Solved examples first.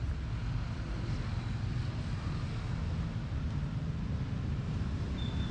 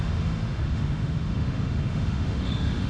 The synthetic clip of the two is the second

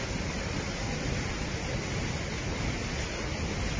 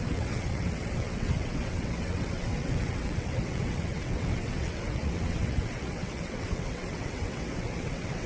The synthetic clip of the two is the second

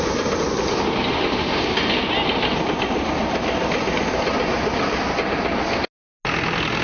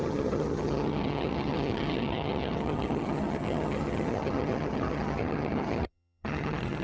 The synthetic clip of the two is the second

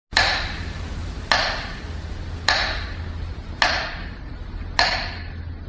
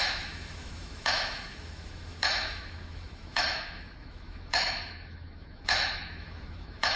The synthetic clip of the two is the second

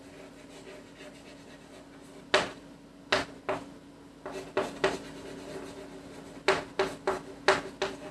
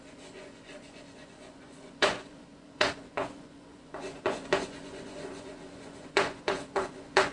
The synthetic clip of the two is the second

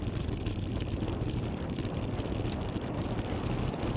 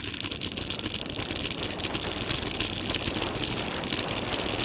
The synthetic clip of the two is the first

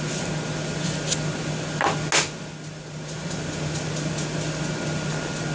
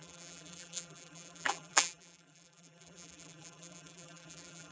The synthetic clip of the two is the second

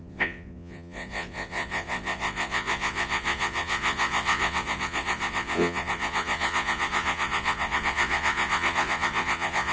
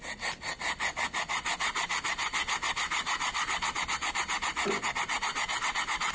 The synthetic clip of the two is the first